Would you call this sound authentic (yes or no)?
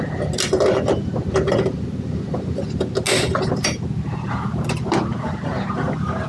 yes